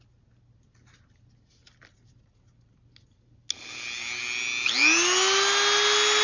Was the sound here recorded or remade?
recorded